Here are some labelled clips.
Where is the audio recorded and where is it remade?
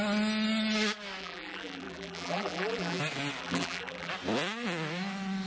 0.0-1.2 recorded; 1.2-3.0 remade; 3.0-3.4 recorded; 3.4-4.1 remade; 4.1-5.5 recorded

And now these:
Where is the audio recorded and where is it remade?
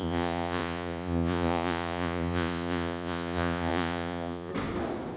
0.0-4.5 remade; 4.5-5.2 recorded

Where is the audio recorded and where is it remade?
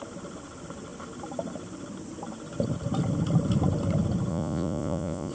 0.0-4.3 recorded; 4.3-5.3 remade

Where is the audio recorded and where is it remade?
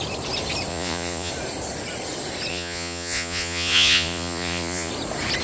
0.0-0.7 recorded; 0.7-1.3 remade; 1.3-2.5 recorded; 2.5-4.9 remade; 4.9-5.4 recorded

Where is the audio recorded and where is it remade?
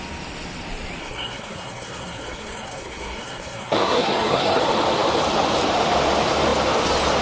0.0-1.0 recorded; 1.0-4.6 remade; 4.6-7.2 recorded